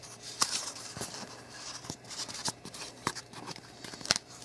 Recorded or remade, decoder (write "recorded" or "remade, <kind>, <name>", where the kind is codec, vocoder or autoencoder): remade, vocoder, BigVGAN v2